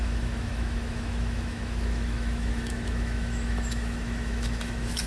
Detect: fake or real fake